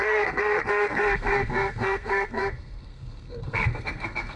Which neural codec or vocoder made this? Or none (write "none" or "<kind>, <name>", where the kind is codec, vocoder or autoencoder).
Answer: codec, SNAC